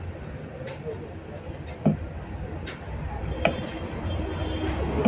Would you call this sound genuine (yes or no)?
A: yes